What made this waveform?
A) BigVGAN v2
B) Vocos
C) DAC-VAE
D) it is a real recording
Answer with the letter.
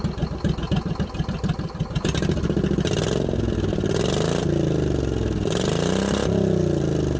D